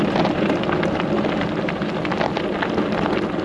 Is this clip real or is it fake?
real